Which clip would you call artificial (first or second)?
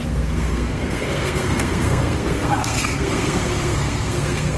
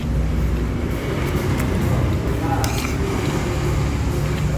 first